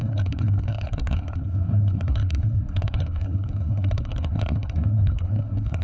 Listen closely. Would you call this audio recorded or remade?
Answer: remade